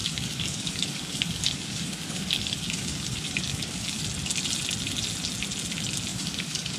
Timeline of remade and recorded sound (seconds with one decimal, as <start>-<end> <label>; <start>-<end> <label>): 0.0-4.0 remade; 4.0-6.1 recorded; 6.1-6.8 remade